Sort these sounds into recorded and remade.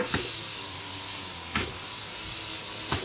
recorded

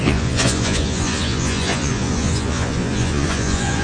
remade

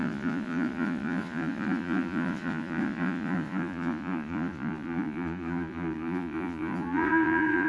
remade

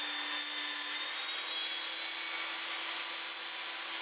recorded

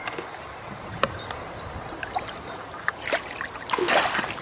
recorded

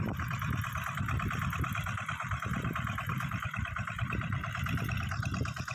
recorded